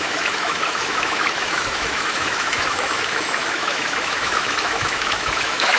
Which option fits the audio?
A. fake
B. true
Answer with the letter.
A